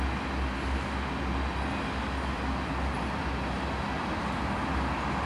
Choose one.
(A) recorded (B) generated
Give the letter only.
A